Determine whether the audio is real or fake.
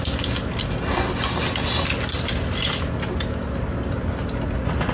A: real